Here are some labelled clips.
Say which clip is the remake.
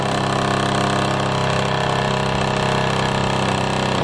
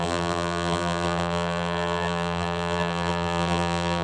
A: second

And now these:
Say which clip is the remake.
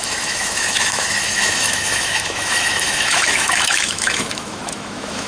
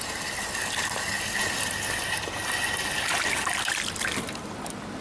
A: first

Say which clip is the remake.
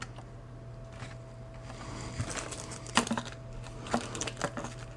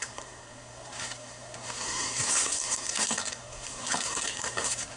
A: second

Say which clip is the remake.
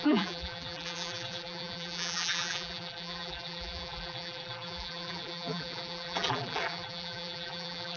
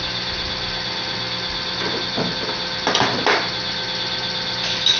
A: first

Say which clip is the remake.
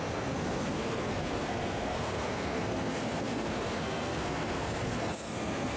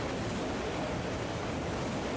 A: first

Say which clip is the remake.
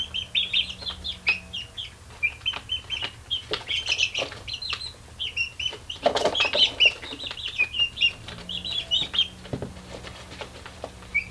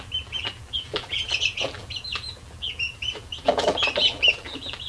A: second